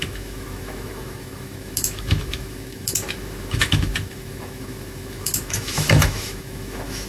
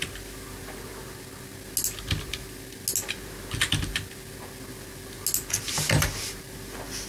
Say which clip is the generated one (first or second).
first